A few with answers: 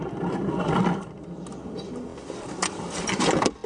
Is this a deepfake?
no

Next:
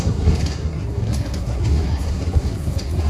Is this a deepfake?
yes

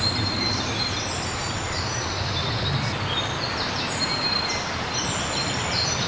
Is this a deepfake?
no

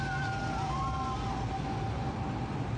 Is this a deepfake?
no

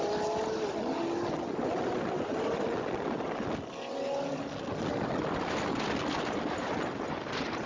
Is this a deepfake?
no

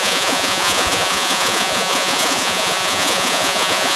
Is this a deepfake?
yes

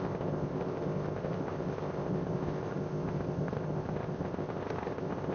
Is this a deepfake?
yes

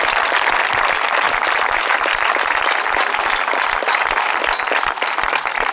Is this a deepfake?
no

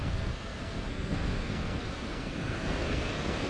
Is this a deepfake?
yes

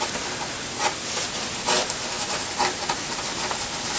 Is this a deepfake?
no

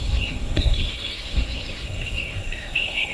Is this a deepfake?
yes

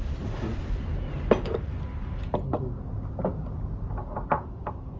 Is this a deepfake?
no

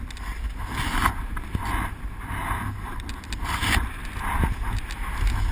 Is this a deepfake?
no